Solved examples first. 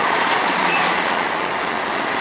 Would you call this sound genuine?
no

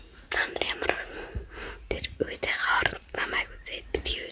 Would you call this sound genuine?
no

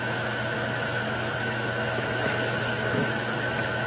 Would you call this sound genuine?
no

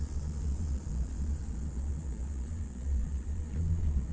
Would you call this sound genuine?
no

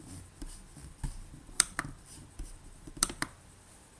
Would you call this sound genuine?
no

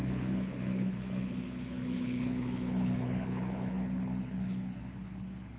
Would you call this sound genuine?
no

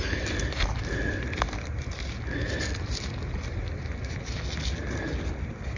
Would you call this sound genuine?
yes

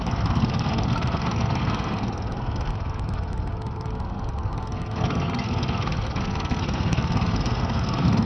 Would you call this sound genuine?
no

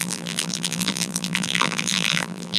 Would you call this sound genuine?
no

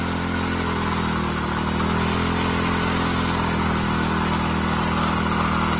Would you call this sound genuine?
yes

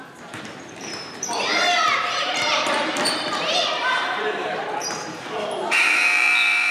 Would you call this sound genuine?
no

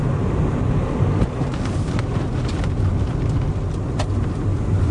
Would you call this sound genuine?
yes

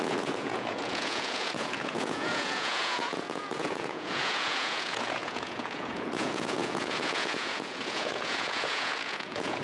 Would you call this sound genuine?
no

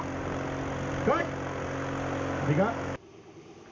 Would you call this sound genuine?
yes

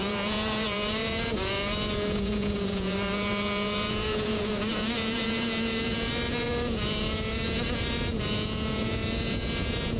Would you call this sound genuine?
no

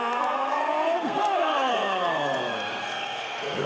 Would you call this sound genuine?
no